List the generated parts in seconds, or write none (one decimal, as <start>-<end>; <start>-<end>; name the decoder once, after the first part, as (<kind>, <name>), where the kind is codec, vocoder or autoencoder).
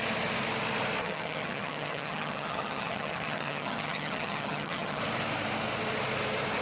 1.0-5.0 (vocoder, HiFi-GAN)